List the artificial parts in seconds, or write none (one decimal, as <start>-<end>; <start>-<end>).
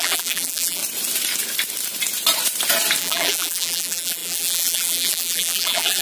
0.0-0.8; 3.0-6.0